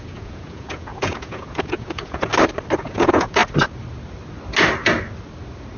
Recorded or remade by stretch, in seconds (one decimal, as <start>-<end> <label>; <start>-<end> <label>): 0.0-2.3 remade; 2.3-2.8 recorded; 2.8-3.4 remade; 3.4-5.8 recorded